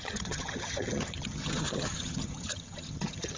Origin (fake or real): fake